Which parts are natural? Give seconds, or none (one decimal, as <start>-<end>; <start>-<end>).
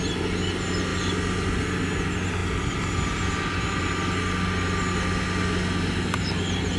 0.0-2.4; 3.8-6.8